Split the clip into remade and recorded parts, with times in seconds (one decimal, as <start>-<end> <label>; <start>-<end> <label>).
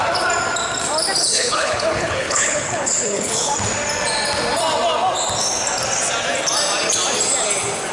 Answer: 0.0-1.2 recorded; 1.2-3.5 remade; 3.5-7.9 recorded